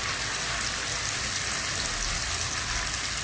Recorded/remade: recorded